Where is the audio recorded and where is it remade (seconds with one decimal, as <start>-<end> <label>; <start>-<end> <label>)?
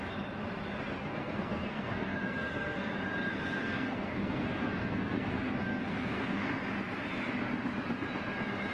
0.0-1.0 recorded; 1.0-2.9 remade; 2.9-3.3 recorded; 3.3-6.5 remade; 6.5-8.7 recorded